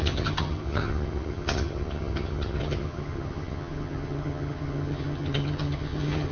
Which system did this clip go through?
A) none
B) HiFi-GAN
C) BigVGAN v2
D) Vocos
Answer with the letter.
B